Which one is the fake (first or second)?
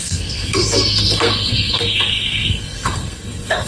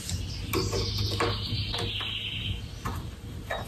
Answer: first